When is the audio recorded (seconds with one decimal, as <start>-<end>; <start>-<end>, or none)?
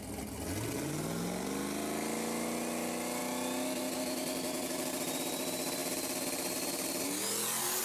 0.0-7.8